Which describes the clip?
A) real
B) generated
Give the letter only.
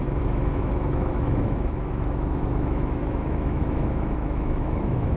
B